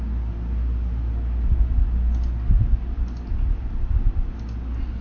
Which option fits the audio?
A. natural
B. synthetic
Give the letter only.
A